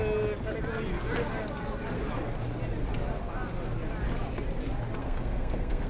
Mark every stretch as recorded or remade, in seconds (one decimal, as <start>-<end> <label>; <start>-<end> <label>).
0.0-5.0 recorded; 5.0-5.9 remade